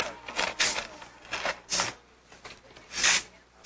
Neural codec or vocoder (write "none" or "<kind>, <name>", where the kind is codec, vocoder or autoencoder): none